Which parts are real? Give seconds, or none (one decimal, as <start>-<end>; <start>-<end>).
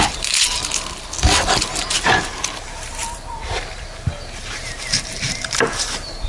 0.6-1.8